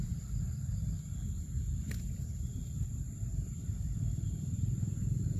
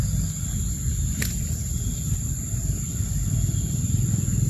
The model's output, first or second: first